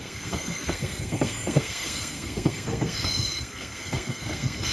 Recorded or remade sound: remade